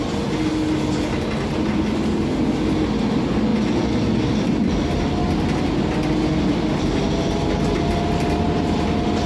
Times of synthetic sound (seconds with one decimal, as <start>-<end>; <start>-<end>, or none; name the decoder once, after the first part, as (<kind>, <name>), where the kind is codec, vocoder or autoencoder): none